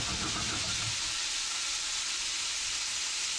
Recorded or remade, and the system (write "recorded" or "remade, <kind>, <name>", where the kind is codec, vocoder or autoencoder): recorded